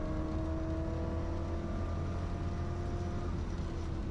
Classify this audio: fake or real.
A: real